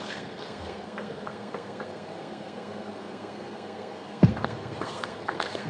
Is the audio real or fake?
fake